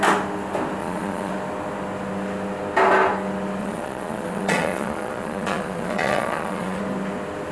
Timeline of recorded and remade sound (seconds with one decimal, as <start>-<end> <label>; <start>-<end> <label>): 0.0-0.8 recorded; 0.8-1.3 remade; 1.3-3.6 recorded; 3.6-6.8 remade; 6.8-7.5 recorded